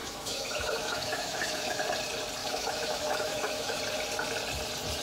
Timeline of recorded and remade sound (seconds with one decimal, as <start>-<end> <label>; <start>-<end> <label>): 0.0-1.8 remade; 1.8-2.4 recorded; 2.4-3.8 remade; 3.8-5.0 recorded